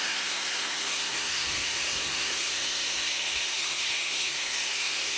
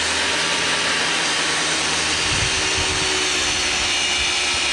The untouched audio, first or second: second